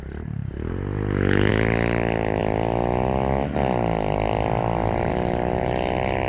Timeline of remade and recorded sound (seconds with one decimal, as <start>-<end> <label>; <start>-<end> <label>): 0.0-6.3 recorded